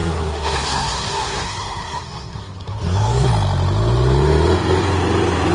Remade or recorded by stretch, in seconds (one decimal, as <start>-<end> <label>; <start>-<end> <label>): 0.0-3.3 remade; 3.3-5.5 recorded